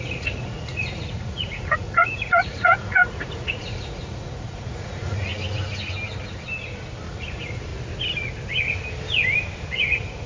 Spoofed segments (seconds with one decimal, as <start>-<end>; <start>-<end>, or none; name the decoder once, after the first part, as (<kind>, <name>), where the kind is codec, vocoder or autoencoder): 0.0-5.3 (vocoder, Vocos); 7.1-7.7; 9.7-10.3